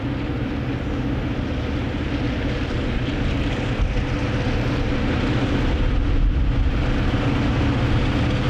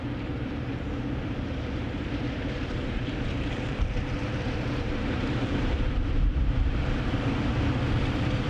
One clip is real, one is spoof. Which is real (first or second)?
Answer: first